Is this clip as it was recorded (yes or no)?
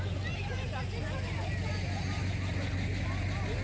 yes